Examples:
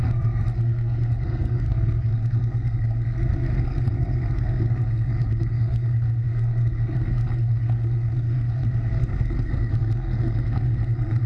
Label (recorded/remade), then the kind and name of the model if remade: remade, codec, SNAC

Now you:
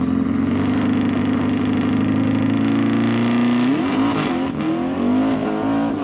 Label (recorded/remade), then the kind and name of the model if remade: recorded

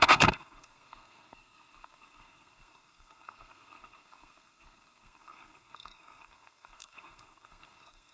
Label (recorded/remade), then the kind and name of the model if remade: remade, codec, SNAC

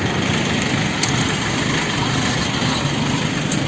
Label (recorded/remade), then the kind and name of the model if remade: recorded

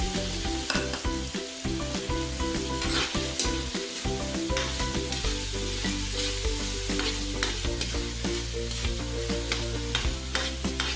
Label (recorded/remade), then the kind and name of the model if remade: recorded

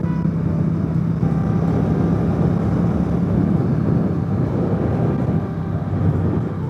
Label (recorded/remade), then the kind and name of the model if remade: recorded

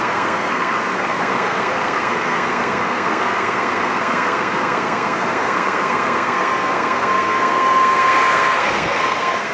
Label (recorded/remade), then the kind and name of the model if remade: remade, codec, SNAC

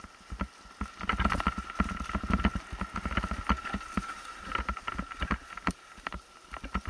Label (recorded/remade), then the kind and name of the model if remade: recorded